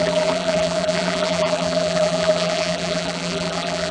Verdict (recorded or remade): remade